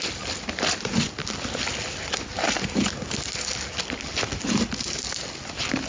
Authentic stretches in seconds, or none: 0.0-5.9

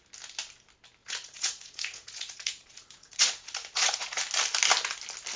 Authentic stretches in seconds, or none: 0.0-1.0; 4.2-5.4

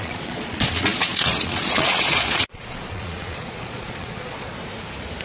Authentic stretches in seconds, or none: 4.5-5.2

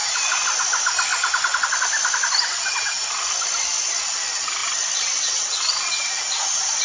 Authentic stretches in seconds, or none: 0.0-1.1; 4.0-6.8

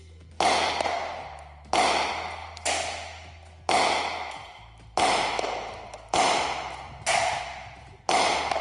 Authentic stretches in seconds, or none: 0.0-8.6

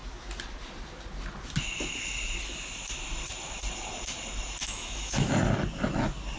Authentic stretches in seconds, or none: 0.0-4.6; 5.3-6.4

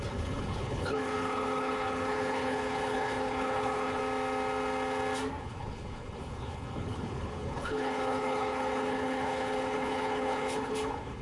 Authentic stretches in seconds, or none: 4.0-5.4